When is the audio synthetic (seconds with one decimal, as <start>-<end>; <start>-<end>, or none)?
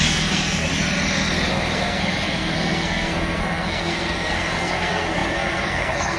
0.0-0.7; 1.5-6.2